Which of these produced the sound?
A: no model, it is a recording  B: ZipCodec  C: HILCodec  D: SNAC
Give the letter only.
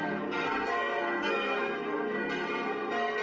D